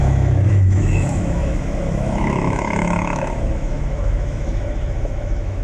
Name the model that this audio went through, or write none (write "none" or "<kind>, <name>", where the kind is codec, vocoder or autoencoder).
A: autoencoder, DAC-VAE